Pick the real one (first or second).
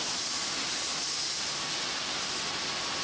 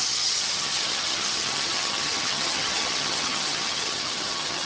first